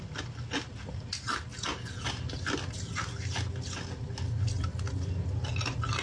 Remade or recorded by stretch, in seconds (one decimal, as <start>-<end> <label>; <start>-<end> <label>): 0.0-6.0 recorded